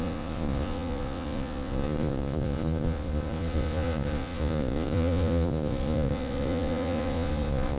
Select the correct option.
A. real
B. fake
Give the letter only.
B